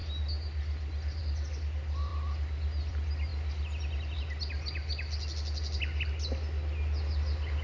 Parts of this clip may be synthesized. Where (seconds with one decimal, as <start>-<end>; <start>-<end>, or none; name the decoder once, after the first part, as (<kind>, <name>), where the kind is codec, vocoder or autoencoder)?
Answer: none